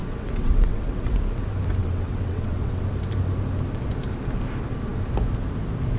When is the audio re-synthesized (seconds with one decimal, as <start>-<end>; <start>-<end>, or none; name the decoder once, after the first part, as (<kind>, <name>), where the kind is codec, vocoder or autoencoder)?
0.0-1.2 (vocoder, WaveNeXt); 1.8-2.8